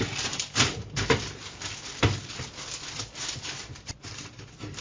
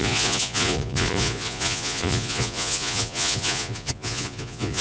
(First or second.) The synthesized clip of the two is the second